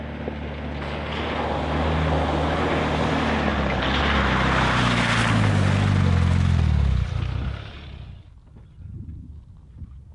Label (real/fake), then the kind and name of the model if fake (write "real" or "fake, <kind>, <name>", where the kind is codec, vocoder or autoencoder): real